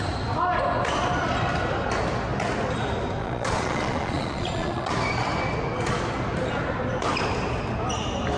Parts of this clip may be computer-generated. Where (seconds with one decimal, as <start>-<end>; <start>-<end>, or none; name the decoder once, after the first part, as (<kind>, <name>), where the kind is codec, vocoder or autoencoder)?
3.2-4.9 (vocoder, Vocos)